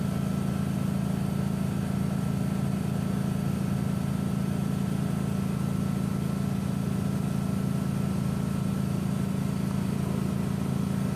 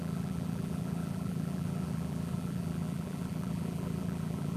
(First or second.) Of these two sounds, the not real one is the second